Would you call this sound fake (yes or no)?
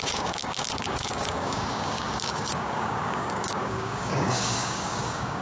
yes